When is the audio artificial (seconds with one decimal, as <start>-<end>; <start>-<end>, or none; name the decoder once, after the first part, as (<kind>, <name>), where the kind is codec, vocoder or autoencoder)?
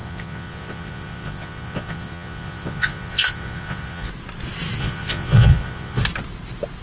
0.0-4.1 (vocoder, Vocos); 4.8-6.0